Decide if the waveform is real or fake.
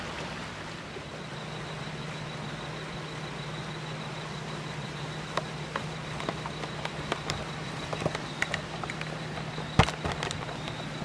real